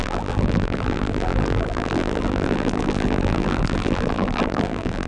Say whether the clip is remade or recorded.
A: remade